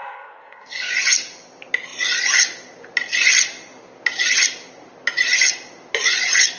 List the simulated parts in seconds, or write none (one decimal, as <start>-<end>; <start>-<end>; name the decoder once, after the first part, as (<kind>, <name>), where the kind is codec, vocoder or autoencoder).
0.0-0.9 (codec, SNAC)